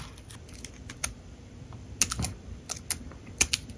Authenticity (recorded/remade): recorded